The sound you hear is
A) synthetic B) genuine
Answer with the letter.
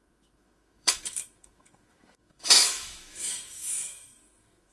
A